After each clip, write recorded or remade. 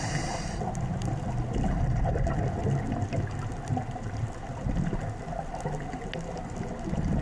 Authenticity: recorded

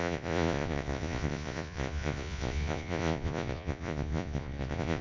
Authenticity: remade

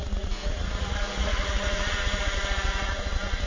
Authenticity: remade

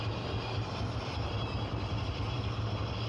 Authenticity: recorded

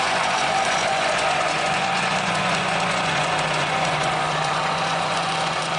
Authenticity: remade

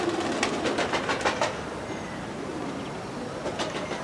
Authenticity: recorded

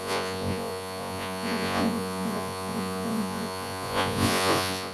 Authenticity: remade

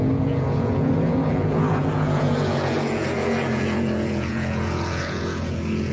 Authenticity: remade